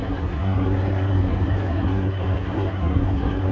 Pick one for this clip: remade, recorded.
remade